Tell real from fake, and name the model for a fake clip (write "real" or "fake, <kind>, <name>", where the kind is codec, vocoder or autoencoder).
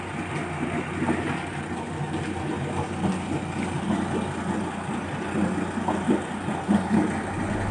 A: real